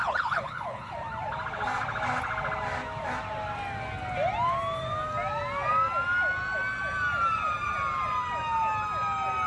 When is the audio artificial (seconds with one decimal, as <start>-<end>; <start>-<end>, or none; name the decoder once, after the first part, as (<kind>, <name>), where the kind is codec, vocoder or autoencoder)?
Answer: 0.0-0.9 (codec, HILCodec)

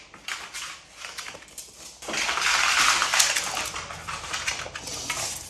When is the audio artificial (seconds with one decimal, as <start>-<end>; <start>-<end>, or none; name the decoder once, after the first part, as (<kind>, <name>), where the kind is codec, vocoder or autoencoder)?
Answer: none